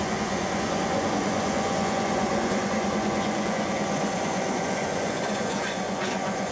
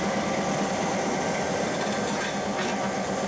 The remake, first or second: first